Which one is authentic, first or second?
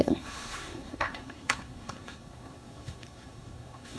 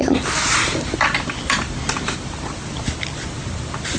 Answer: second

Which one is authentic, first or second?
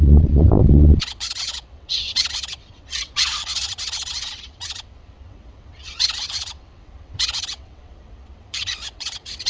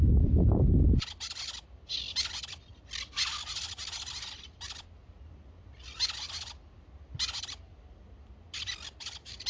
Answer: second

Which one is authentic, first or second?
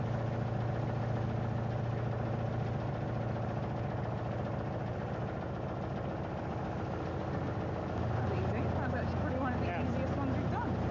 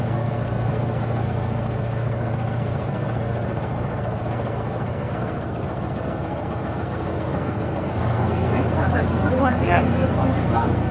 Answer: first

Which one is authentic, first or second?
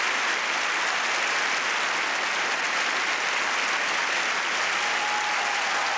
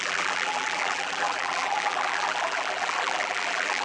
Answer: first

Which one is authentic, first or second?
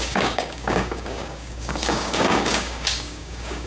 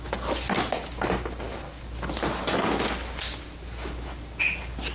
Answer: second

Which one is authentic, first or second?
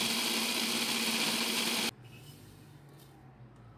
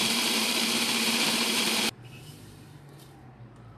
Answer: first